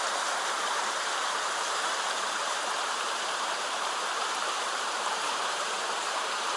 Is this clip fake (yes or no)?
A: yes